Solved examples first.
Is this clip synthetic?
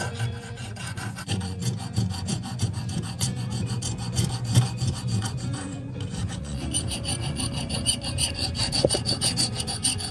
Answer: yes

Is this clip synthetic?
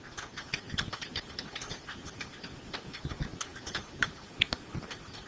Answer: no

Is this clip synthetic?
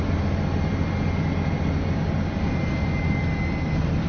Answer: no